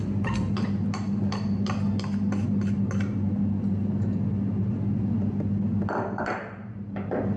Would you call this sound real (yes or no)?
no